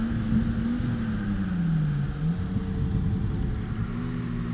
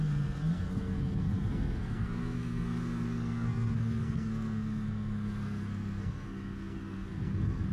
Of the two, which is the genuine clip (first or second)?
first